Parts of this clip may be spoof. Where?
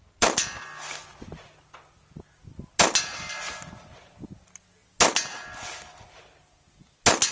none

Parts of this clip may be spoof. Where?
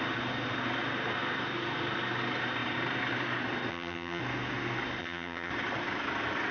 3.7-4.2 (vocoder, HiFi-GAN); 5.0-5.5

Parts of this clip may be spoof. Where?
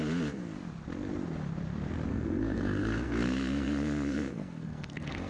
2.1-5.3 (codec, SNAC)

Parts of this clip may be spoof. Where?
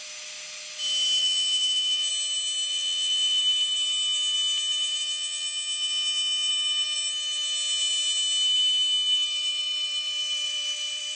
1.2-2.1 (vocoder, BigVGAN v2); 2.7-3.4; 5.0-6.5